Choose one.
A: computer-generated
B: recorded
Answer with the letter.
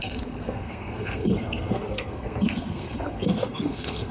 A